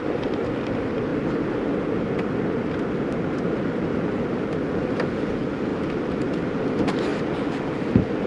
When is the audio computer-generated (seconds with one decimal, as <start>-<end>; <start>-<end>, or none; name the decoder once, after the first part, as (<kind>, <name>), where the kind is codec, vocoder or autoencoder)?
0.0-1.1 (vocoder, BigVGAN v2); 4.7-5.7; 6.4-7.1